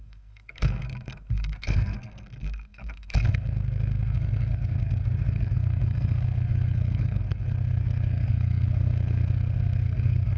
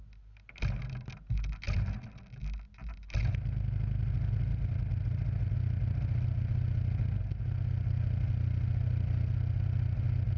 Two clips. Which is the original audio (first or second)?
second